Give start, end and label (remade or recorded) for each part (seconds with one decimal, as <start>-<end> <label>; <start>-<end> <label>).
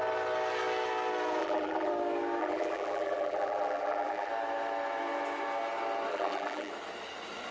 0.0-1.4 recorded; 1.4-1.9 remade; 1.9-2.4 recorded; 2.4-4.3 remade; 4.3-6.1 recorded; 6.1-6.7 remade; 6.7-7.5 recorded